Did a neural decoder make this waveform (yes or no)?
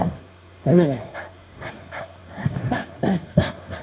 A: yes